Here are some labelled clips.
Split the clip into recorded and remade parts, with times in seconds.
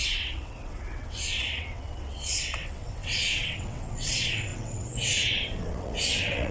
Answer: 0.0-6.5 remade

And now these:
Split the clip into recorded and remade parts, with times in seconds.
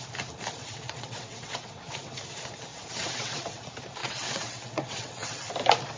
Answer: 0.0-0.6 recorded; 0.6-2.2 remade; 2.2-2.7 recorded; 2.7-3.6 remade; 3.6-4.0 recorded; 4.0-5.5 remade; 5.5-6.0 recorded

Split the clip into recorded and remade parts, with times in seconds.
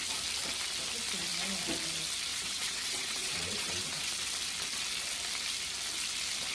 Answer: 0.0-2.3 recorded; 2.3-4.1 remade; 4.1-6.5 recorded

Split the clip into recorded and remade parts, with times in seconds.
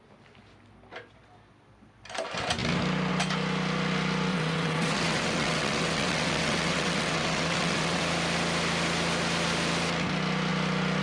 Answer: 0.0-4.3 recorded; 4.3-8.0 remade; 8.0-11.0 recorded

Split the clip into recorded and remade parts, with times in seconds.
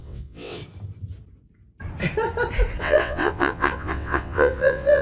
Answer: 0.0-0.6 remade; 0.6-2.8 recorded; 2.8-5.0 remade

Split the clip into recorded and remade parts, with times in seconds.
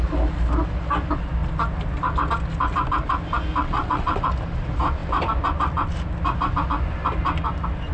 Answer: 0.0-3.6 recorded; 3.6-4.3 remade; 4.3-7.9 recorded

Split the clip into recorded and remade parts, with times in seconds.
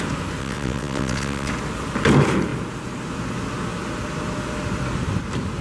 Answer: 0.0-0.4 recorded; 0.4-1.5 remade; 1.5-5.6 recorded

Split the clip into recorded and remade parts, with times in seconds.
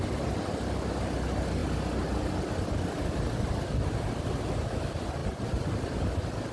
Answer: 0.0-6.5 recorded